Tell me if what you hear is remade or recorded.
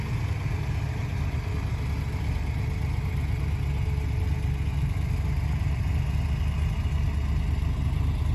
recorded